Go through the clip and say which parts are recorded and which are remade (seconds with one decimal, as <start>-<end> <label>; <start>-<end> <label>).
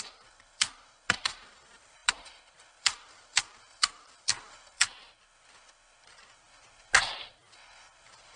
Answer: 0.0-4.8 remade; 4.8-7.3 recorded; 7.3-8.4 remade